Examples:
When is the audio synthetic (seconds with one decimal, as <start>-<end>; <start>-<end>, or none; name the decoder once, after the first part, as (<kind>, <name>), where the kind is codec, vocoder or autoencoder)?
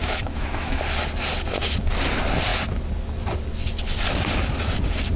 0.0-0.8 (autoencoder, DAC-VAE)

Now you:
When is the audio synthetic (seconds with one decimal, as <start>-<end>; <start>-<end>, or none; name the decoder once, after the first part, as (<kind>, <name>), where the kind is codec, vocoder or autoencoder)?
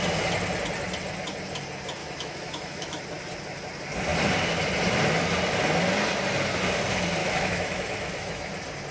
2.0-3.0 (autoencoder, DAC-VAE); 7.2-8.5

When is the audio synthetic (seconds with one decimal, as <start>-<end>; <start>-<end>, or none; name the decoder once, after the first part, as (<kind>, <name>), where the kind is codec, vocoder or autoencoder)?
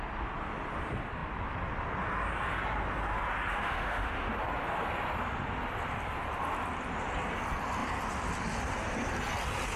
3.5-4.3 (autoencoder, DAC-VAE)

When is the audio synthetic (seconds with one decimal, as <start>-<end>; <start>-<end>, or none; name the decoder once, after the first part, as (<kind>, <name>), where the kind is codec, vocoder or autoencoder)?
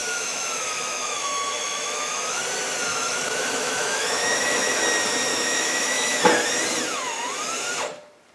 0.0-2.4 (autoencoder, DAC-VAE); 2.9-4.8; 5.3-6.2